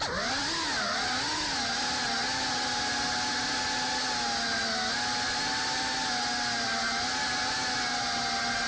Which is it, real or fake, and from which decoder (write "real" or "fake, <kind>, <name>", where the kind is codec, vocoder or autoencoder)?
real